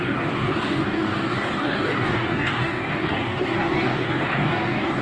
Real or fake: fake